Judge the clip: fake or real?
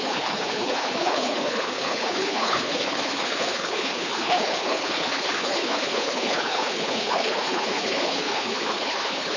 fake